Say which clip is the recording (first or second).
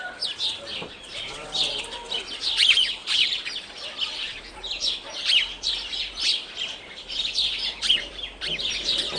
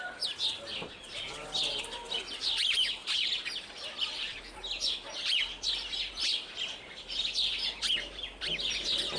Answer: second